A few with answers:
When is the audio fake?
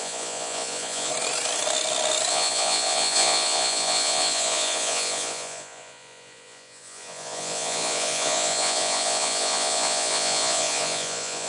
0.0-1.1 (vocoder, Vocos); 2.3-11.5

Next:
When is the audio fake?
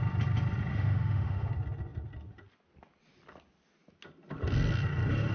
0.7-1.5 (autoencoder, DAC-VAE)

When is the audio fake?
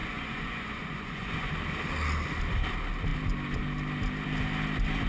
0.0-1.5 (vocoder, Vocos)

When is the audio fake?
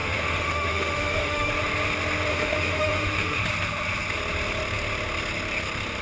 0.0-1.5 (autoencoder, DAC-VAE); 2.3-3.4